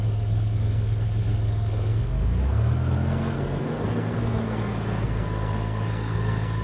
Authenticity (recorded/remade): remade